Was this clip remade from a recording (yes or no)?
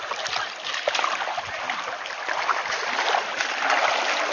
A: no